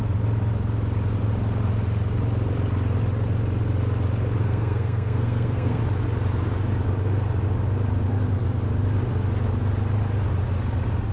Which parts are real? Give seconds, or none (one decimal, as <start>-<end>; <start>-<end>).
0.0-4.4; 5.8-11.1